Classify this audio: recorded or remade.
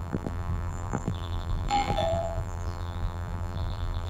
remade